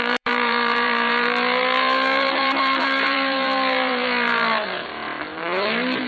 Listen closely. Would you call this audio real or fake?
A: fake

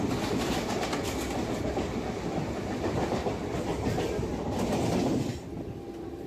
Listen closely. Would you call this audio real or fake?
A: real